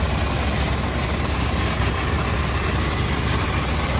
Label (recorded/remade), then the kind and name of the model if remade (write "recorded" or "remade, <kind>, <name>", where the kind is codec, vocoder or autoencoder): recorded